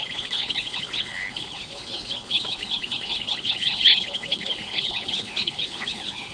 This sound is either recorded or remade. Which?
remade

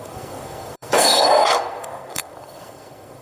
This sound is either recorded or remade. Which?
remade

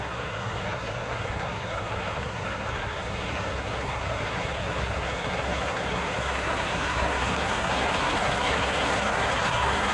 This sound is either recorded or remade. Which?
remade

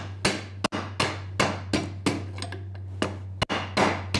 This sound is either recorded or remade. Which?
recorded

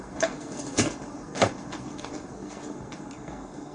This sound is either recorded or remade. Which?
remade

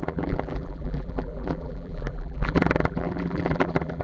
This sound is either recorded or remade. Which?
remade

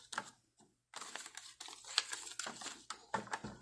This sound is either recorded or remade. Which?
recorded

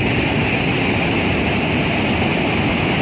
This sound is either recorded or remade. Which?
recorded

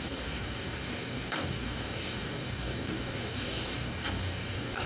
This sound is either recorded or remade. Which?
remade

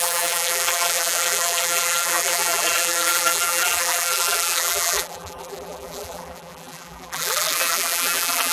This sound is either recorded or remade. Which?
remade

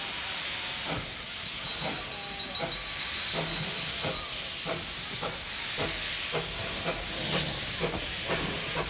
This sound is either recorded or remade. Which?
recorded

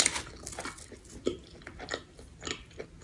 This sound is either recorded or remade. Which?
recorded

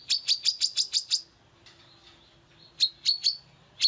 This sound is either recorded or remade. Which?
recorded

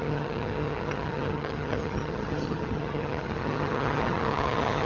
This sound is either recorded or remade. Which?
remade